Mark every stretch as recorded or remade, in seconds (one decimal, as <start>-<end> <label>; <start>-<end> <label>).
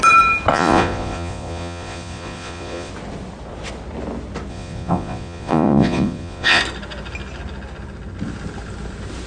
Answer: 0.0-0.5 recorded; 0.5-2.9 remade; 2.9-4.5 recorded; 4.5-6.6 remade; 6.6-9.3 recorded